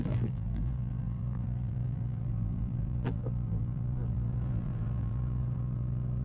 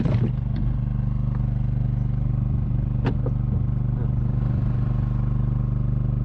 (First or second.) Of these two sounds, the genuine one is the second